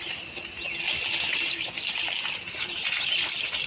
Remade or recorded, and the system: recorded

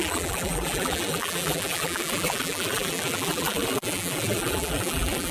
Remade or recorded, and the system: remade, vocoder, BigVGAN v2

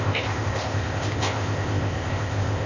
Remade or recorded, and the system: remade, codec, ZipCodec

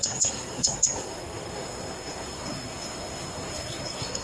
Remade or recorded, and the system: remade, codec, SNAC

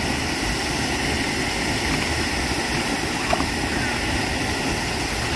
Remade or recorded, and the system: recorded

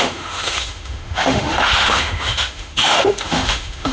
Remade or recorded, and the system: remade, autoencoder, DAC-VAE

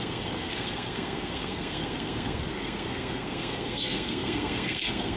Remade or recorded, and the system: remade, codec, SNAC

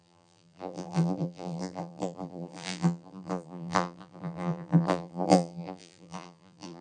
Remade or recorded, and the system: remade, vocoder, BigVGAN v2